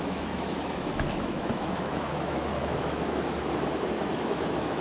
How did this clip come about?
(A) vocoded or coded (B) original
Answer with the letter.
A